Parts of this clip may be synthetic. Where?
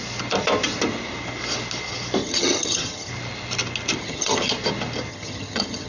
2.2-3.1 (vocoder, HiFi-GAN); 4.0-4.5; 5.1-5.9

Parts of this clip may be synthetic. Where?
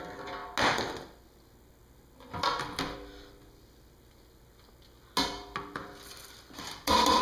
none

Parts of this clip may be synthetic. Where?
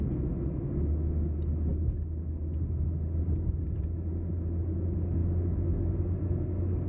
none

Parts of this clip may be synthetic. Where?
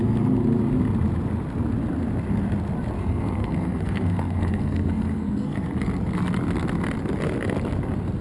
3.0-5.7 (codec, SNAC)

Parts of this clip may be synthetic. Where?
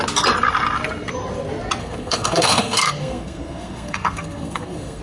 1.8-5.0 (codec, SNAC)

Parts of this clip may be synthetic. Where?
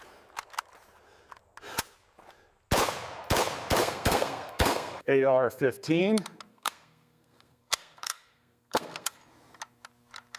3.8-6.0 (codec, SNAC); 6.5-9.2